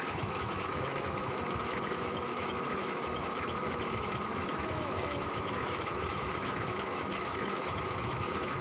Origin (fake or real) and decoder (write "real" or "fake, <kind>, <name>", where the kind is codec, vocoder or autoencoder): fake, autoencoder, DAC-VAE